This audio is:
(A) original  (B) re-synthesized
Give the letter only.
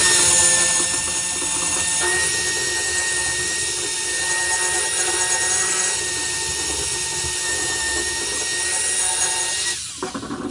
A